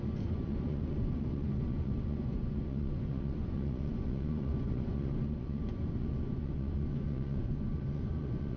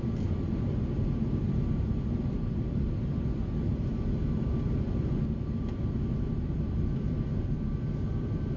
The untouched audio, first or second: second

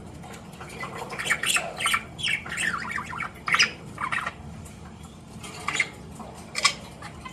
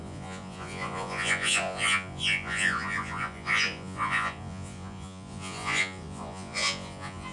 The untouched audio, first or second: first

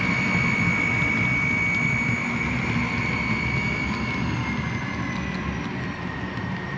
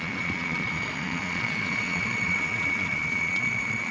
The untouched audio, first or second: first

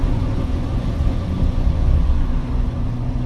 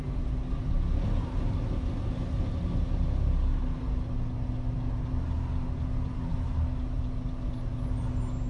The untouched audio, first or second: second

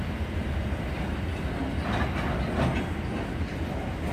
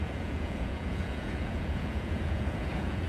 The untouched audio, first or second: first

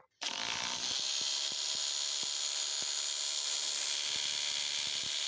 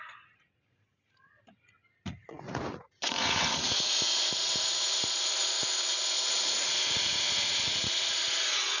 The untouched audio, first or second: first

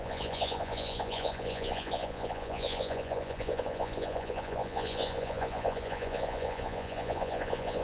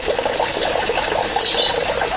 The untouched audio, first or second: second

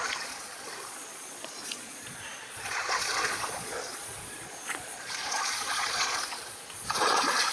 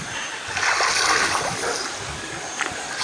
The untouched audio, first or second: second